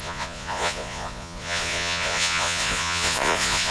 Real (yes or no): no